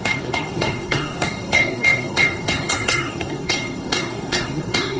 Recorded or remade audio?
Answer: remade